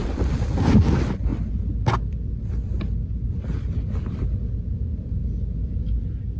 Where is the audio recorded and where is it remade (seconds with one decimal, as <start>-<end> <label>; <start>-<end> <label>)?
0.0-6.4 recorded